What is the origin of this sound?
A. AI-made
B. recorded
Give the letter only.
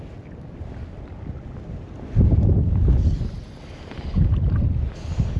B